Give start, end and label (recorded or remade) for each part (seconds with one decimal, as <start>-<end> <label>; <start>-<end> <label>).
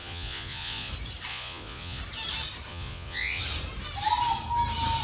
0.0-0.9 remade; 0.9-1.3 recorded; 1.3-2.0 remade; 2.0-2.7 recorded; 2.7-3.4 remade; 3.4-5.0 recorded